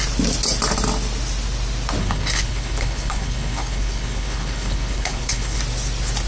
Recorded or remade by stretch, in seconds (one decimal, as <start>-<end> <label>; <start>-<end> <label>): 0.0-2.0 recorded; 2.0-5.6 remade; 5.6-6.3 recorded

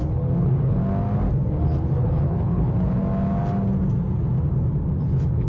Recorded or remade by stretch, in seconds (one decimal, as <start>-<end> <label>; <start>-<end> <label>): 0.0-0.8 remade; 0.8-1.5 recorded; 1.5-3.0 remade; 3.0-5.0 recorded; 5.0-5.5 remade

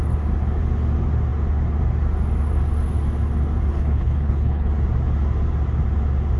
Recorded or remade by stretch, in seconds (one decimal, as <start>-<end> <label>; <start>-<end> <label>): 0.0-3.7 recorded; 3.7-4.7 remade; 4.7-6.4 recorded

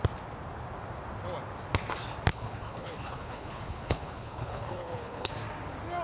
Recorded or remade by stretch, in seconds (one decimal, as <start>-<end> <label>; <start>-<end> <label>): 0.0-2.3 recorded; 2.3-5.3 remade; 5.3-6.0 recorded

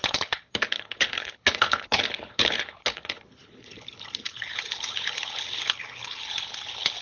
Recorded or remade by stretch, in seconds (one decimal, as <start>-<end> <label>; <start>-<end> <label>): 0.0-7.0 remade

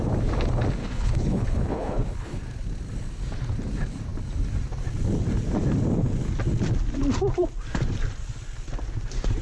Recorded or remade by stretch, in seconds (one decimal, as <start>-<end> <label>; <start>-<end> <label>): 0.0-0.8 recorded; 0.8-2.4 remade; 2.4-9.4 recorded

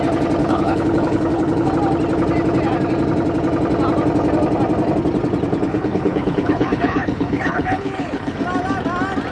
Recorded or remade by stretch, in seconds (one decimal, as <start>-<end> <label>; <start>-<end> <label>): 0.0-0.4 recorded; 0.4-1.7 remade; 1.7-5.7 recorded; 5.7-8.4 remade; 8.4-9.3 recorded